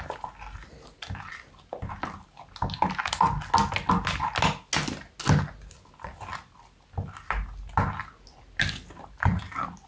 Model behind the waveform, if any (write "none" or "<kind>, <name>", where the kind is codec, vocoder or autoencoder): none